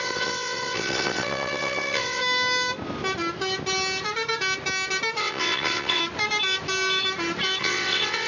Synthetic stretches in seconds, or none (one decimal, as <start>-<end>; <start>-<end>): 0.0-2.2; 5.2-6.0; 7.6-8.3